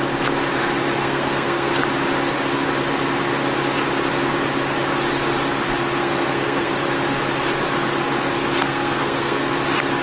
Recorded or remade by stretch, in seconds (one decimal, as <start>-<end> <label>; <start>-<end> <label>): 0.0-1.0 recorded; 1.0-1.8 remade; 1.8-6.0 recorded; 6.0-6.7 remade; 6.7-8.6 recorded; 8.6-9.5 remade; 9.5-10.0 recorded